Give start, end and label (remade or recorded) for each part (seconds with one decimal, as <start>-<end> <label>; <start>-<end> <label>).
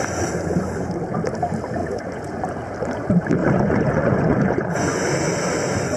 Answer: 0.0-1.8 recorded; 1.8-2.4 remade; 2.4-3.4 recorded; 3.4-5.1 remade; 5.1-6.0 recorded